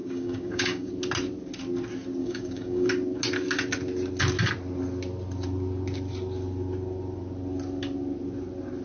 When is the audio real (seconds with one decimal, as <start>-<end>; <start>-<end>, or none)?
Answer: 0.9-2.2; 2.9-8.8